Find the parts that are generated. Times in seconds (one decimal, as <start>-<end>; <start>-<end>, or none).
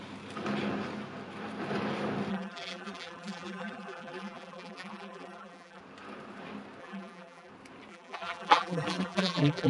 2.3-5.8; 6.8-7.5; 7.9-9.7